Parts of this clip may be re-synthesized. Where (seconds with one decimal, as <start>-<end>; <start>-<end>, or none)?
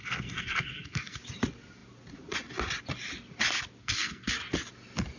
0.0-1.2; 3.8-4.3